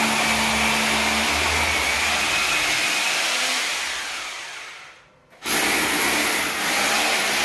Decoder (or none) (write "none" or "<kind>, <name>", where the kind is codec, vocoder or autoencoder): none